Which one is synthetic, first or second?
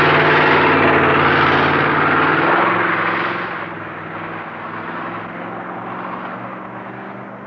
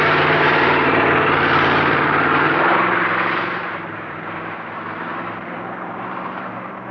second